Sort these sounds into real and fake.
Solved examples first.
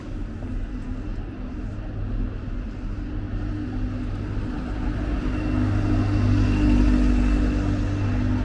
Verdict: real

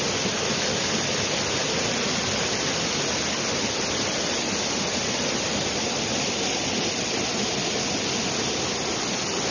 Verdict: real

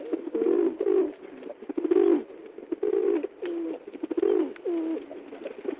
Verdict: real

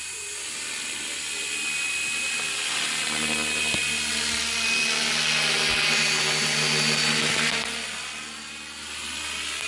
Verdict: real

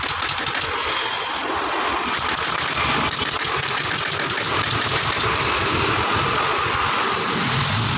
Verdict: real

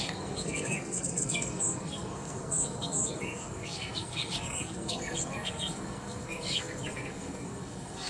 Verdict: fake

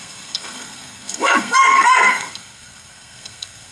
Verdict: fake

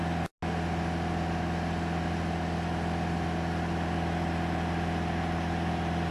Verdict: real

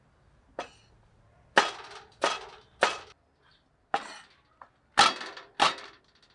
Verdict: real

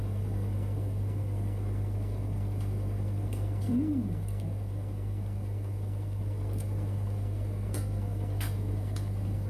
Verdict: fake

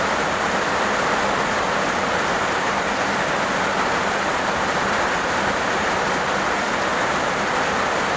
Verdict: real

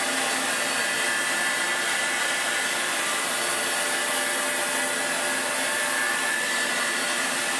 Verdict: real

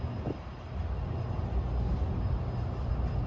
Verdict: real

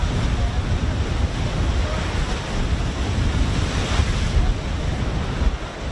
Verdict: real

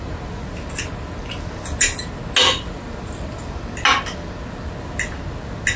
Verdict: real